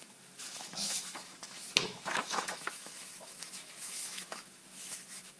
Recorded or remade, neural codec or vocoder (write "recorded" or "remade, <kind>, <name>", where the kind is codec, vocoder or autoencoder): remade, autoencoder, DAC-VAE